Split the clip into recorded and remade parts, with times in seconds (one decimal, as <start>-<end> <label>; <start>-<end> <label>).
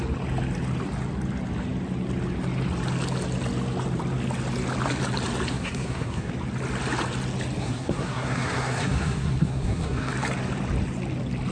0.0-5.5 recorded; 5.5-6.3 remade; 6.3-7.6 recorded; 7.6-10.1 remade; 10.1-11.5 recorded